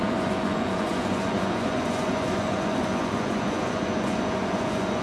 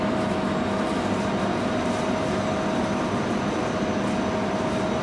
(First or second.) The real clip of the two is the second